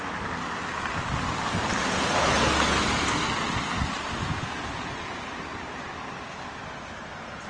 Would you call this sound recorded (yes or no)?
yes